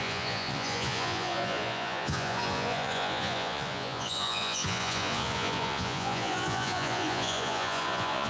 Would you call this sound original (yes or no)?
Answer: no